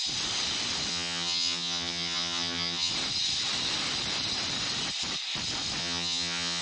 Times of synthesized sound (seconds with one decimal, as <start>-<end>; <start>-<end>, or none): 0.9-2.9; 5.8-6.6